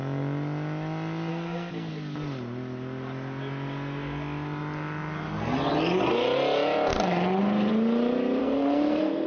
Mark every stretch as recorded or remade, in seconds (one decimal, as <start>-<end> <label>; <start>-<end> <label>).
0.0-1.3 recorded; 1.3-1.9 remade; 1.9-8.4 recorded; 8.4-9.3 remade